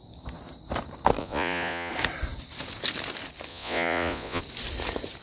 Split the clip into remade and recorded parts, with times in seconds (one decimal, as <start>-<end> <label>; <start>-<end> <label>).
0.0-1.2 recorded; 1.2-1.9 remade; 1.9-3.5 recorded; 3.5-4.4 remade; 4.4-5.2 recorded